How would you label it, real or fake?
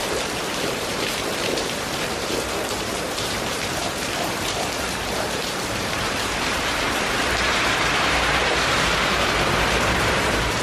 fake